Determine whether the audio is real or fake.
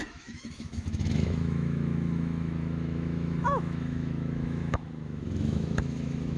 fake